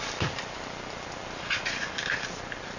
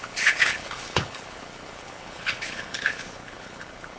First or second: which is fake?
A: second